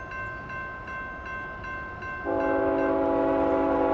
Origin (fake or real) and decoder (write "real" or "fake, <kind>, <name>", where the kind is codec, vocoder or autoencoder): real